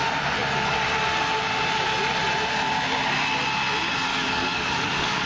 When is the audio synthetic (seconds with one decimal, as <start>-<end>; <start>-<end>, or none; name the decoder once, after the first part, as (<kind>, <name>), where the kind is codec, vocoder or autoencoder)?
4.1-5.3 (codec, DAC)